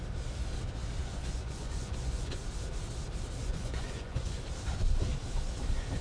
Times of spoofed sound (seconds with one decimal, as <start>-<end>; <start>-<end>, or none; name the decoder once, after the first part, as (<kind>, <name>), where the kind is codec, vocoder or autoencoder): 1.0-2.4 (vocoder, Vocos); 3.4-4.4